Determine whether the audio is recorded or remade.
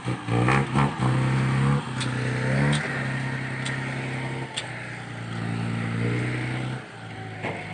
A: recorded